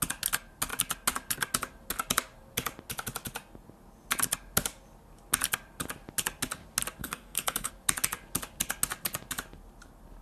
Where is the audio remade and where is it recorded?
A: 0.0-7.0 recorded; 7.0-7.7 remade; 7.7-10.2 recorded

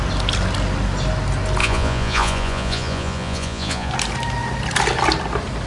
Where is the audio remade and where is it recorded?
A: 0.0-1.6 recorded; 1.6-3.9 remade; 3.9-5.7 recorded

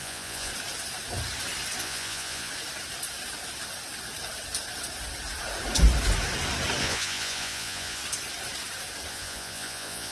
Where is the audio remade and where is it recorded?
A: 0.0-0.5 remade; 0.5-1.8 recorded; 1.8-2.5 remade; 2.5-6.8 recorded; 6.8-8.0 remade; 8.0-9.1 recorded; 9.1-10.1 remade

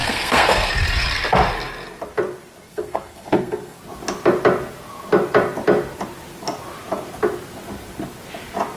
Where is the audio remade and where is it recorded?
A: 0.0-0.7 remade; 0.7-2.7 recorded; 2.7-3.8 remade; 3.8-8.8 recorded

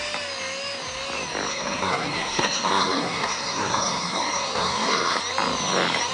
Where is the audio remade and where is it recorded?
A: 0.0-1.5 recorded; 1.5-5.2 remade; 5.2-6.1 recorded